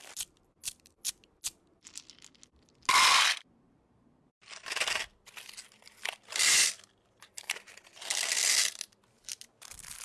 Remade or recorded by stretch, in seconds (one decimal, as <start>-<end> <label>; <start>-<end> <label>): 0.0-10.0 recorded